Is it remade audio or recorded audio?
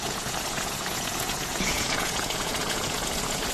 remade